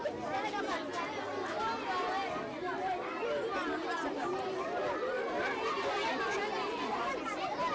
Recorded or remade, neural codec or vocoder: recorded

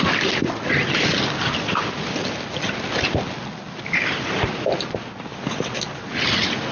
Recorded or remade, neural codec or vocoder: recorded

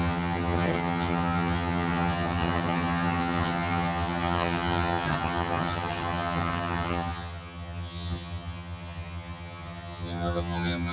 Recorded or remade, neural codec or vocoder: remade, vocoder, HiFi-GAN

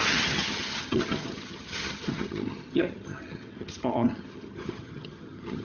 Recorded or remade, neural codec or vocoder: remade, vocoder, HiFi-GAN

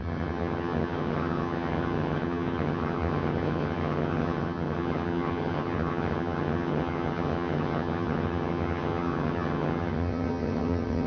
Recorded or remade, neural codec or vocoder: remade, vocoder, HiFi-GAN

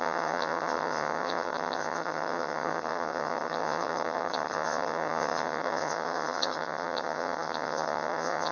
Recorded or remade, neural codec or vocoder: remade, vocoder, HiFi-GAN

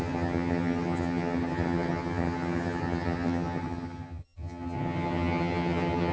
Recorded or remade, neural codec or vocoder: remade, vocoder, HiFi-GAN